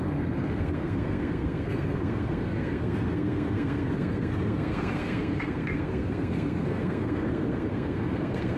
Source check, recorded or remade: remade